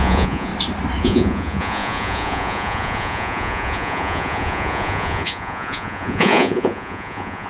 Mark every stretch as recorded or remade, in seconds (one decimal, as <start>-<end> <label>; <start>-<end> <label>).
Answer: 0.0-0.5 remade; 0.5-1.0 recorded; 1.0-7.5 remade